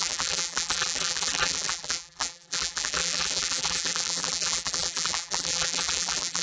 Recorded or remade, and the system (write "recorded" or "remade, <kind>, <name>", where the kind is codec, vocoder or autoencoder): remade, vocoder, BigVGAN v2